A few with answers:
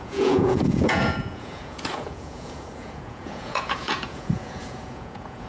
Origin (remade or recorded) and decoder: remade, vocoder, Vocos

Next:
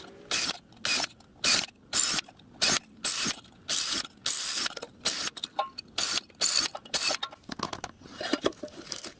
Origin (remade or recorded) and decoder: recorded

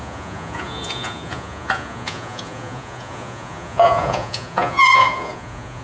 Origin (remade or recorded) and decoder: remade, vocoder, Vocos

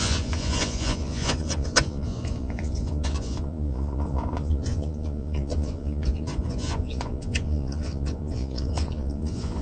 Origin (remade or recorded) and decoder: remade, vocoder, Vocos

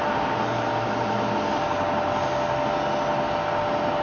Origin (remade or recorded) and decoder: recorded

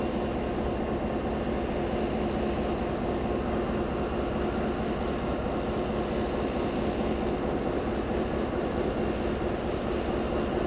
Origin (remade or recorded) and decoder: recorded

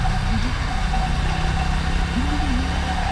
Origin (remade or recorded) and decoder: recorded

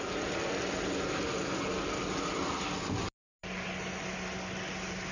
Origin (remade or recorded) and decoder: recorded